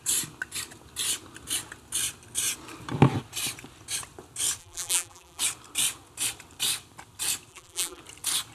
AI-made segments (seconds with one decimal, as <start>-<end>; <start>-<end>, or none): 4.6-5.4; 7.5-8.0